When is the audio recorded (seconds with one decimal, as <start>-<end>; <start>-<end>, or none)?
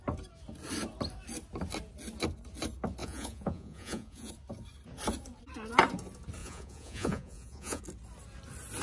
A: 0.0-3.0; 4.3-6.4; 7.8-8.8